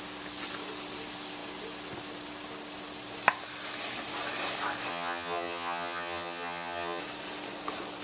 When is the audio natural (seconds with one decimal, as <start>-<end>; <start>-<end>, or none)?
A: 0.0-4.9; 7.0-8.0